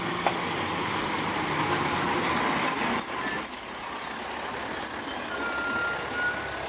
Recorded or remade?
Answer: recorded